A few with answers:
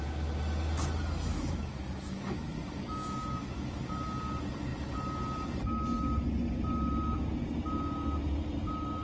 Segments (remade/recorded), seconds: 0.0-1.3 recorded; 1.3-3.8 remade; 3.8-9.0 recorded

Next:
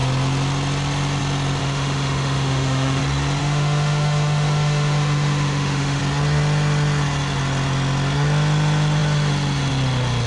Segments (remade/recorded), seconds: 0.0-1.6 recorded; 1.6-3.0 remade; 3.0-3.4 recorded; 3.4-6.0 remade; 6.0-10.3 recorded

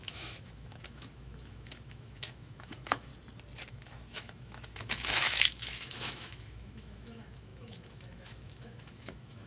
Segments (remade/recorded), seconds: 0.0-3.1 remade; 3.1-3.7 recorded; 3.7-9.5 remade

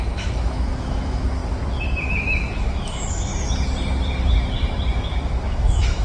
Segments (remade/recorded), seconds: 0.0-1.4 remade; 1.4-2.1 recorded; 2.1-3.3 remade; 3.3-4.9 recorded; 4.9-6.0 remade

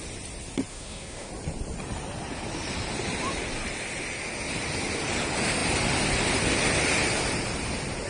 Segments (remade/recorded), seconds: 0.0-0.7 recorded; 0.7-1.3 remade; 1.3-8.1 recorded